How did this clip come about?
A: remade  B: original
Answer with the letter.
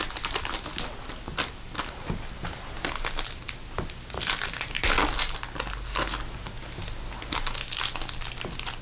B